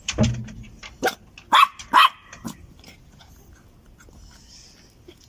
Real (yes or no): yes